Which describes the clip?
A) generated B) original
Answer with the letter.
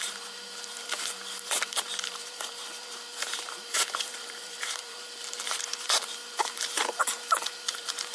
A